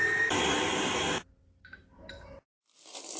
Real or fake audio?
real